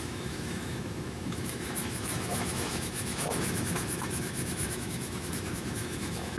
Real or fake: fake